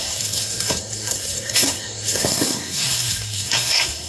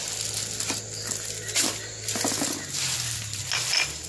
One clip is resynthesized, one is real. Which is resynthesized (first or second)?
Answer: first